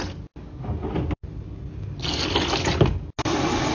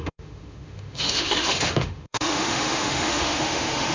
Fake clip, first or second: second